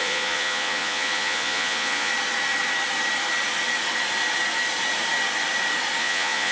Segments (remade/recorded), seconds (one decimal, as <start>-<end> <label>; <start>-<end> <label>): 0.0-2.1 remade; 2.1-6.0 recorded; 6.0-6.5 remade